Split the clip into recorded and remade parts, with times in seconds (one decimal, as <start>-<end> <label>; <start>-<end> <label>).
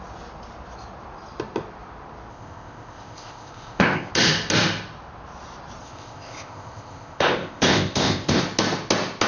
0.0-2.3 recorded; 2.3-4.1 remade; 4.1-5.8 recorded; 5.8-8.4 remade; 8.4-9.3 recorded